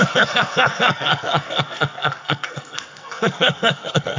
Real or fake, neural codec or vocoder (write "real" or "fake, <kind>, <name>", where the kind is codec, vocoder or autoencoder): fake, codec, SNAC